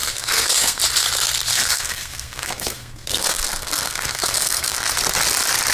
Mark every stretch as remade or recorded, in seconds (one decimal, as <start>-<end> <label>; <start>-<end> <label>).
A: 0.0-0.8 remade; 0.8-1.5 recorded; 1.5-4.9 remade; 4.9-5.7 recorded